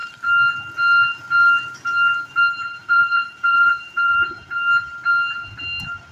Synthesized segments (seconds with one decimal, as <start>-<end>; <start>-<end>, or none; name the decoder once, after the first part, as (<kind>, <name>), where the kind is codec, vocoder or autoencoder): 2.8-4.5 (vocoder, Vocos)